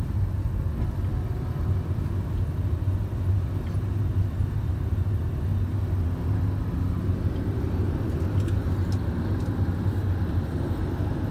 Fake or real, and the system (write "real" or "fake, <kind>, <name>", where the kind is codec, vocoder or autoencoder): real